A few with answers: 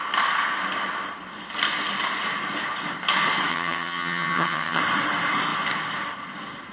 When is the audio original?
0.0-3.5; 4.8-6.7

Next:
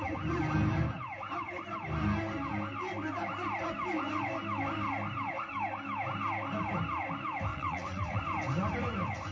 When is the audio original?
0.0-7.5; 8.2-9.3

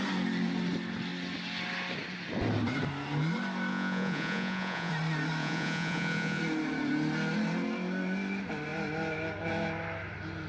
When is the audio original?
0.0-3.7; 4.9-5.4; 6.4-10.5

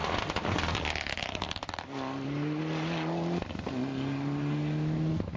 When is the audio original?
0.0-5.4